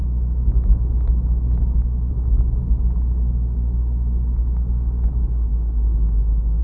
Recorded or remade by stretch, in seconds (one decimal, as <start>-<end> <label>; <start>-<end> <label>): 0.0-6.6 recorded